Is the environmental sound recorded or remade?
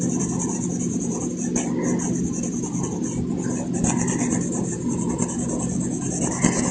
recorded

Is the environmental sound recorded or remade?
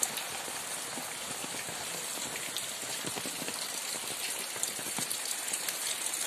recorded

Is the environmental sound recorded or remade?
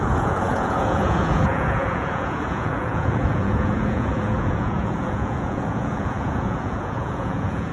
remade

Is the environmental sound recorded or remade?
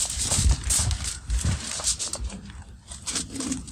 recorded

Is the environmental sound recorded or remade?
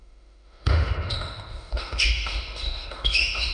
remade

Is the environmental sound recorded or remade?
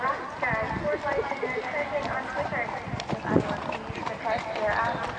recorded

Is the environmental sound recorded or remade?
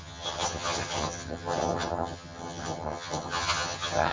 remade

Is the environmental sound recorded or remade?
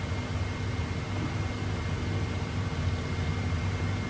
recorded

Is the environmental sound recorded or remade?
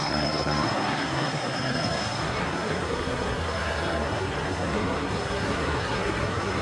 remade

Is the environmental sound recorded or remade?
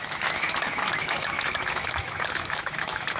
remade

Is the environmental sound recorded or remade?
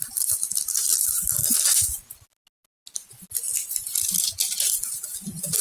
recorded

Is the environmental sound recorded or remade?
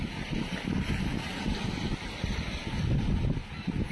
recorded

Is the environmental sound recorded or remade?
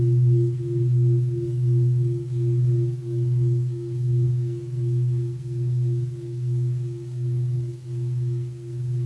remade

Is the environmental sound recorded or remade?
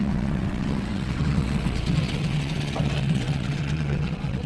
remade